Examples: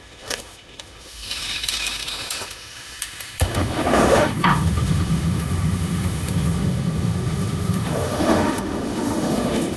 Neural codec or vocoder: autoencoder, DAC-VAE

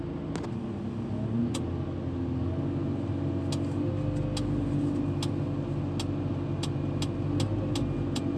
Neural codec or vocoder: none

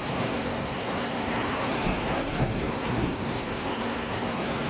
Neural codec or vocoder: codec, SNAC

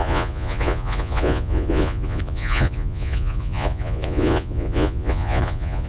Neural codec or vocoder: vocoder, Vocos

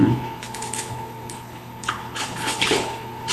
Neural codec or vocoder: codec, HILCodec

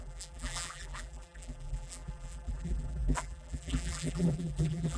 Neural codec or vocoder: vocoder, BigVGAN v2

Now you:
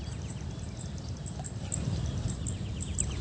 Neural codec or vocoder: none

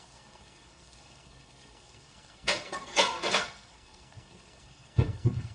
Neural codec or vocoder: codec, SNAC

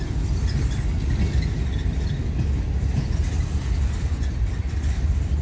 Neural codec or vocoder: none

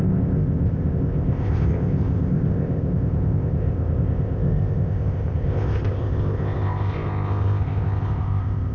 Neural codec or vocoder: codec, ZipCodec